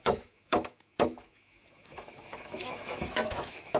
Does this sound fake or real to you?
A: fake